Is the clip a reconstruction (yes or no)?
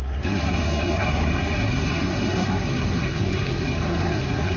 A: yes